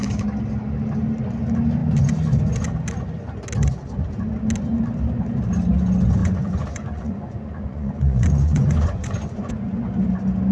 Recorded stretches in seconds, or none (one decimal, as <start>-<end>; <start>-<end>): 0.0-6.2; 9.5-10.5